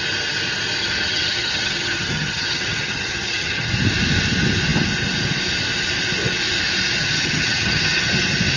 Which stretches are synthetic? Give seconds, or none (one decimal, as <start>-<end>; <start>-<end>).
0.8-3.7; 7.0-8.1